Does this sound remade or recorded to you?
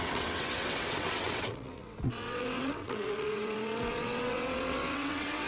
remade